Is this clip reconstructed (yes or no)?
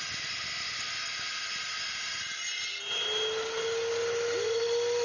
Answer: no